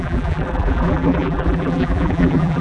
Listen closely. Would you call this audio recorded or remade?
remade